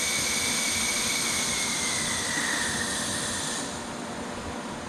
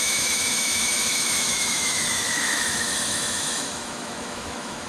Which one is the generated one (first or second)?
second